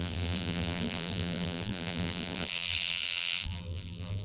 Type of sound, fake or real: fake